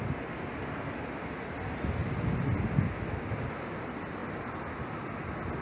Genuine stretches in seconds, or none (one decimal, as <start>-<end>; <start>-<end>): 0.0-5.6